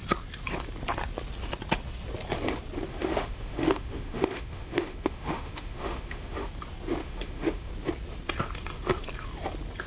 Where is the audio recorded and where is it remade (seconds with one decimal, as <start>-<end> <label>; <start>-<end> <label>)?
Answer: 0.0-2.9 recorded; 2.9-6.5 remade; 6.5-7.0 recorded; 7.0-7.7 remade; 7.7-9.9 recorded